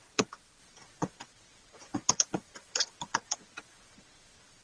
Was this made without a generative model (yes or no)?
no